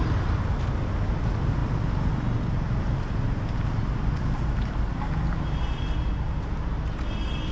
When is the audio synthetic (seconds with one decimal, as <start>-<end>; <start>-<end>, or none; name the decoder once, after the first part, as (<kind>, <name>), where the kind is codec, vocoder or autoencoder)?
none